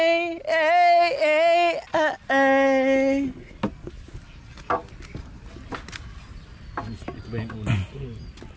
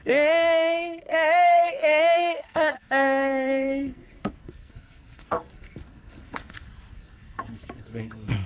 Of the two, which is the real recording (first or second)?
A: first